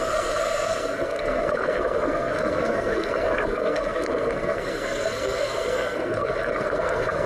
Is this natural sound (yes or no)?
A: no